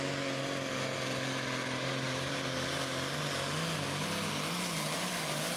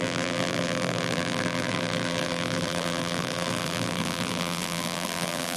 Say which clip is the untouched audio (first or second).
first